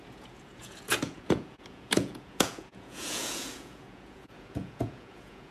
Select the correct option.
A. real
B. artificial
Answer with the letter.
B